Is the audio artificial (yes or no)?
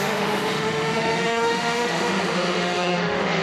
yes